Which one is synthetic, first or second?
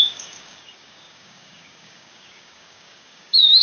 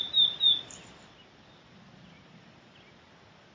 first